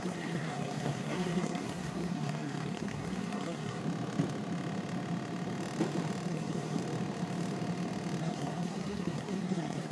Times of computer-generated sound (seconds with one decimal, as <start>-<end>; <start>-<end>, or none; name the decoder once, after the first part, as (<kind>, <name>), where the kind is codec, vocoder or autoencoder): 0.0-3.8 (codec, SNAC); 6.3-6.8; 8.2-9.9

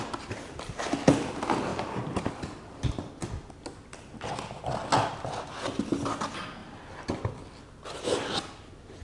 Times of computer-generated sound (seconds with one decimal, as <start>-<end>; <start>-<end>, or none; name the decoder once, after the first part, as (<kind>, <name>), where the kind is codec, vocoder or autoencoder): 1.7-3.1 (vocoder, BigVGAN v2)

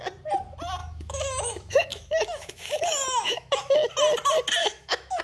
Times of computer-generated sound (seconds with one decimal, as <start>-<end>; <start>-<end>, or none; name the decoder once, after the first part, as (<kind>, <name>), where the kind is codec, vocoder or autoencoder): 0.8-3.9 (autoencoder, DAC-VAE); 4.6-5.2

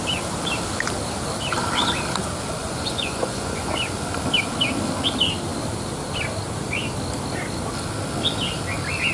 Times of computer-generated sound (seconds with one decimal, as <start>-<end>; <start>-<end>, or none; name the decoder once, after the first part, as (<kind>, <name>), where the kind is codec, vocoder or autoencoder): 2.6-3.7 (vocoder, Vocos)

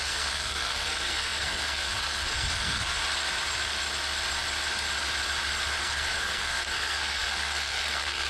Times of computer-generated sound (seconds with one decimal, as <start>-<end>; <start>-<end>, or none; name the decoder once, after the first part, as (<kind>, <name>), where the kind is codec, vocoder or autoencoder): 0.0-3.0 (codec, SNAC); 5.8-8.3

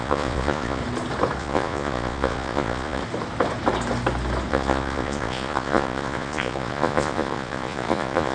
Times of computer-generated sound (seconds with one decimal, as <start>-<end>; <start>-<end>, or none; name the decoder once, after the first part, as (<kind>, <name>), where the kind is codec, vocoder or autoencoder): 0.0-0.8 (vocoder, Vocos); 1.4-3.0; 4.5-8.3

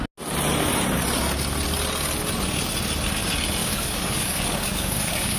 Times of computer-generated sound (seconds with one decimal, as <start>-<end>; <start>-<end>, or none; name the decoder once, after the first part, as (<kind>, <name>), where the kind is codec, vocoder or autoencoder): 3.6-5.4 (codec, DAC)